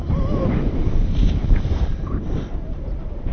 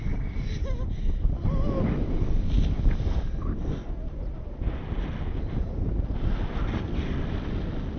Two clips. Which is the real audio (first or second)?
second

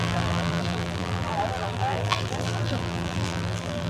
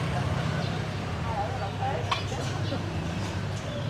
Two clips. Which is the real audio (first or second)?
second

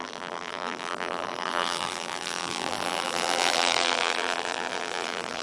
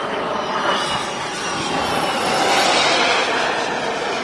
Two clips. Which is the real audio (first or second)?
second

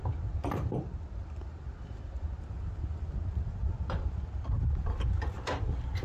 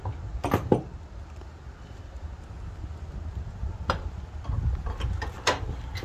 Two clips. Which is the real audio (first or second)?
second